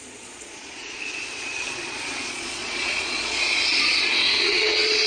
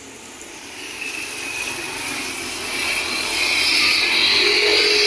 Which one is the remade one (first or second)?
first